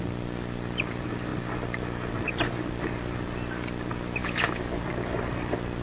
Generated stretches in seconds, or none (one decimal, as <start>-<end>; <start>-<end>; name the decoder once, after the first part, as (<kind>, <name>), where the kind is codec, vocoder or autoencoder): 4.2-4.8 (autoencoder, DAC-VAE)